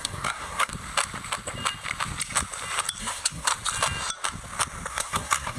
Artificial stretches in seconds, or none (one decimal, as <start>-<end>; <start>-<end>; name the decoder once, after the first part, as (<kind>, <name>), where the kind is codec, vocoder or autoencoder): 0.0-0.7 (codec, SNAC); 3.0-3.5; 4.9-5.6